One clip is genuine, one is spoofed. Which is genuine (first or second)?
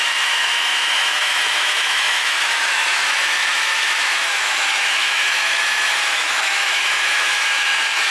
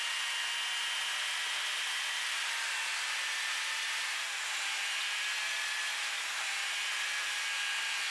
second